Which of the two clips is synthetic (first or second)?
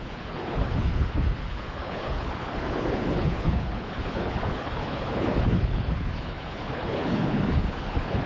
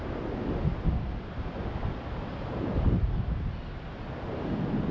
first